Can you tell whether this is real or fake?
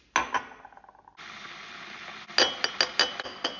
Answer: real